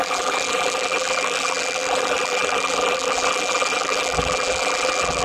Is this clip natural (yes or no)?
no